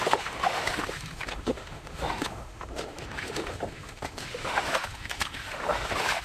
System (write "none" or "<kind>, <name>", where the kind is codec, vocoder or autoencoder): autoencoder, DAC-VAE